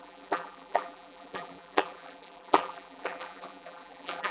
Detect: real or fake fake